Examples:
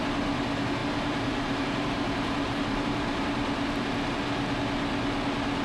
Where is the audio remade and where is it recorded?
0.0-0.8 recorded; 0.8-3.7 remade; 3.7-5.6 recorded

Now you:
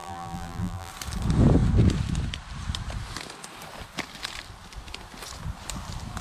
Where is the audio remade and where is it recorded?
0.0-0.9 remade; 0.9-6.2 recorded

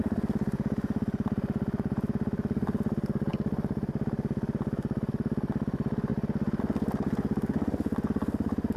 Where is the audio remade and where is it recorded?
0.0-8.8 recorded

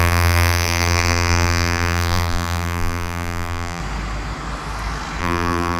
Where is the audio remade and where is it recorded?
0.0-3.8 remade; 3.8-5.2 recorded; 5.2-5.8 remade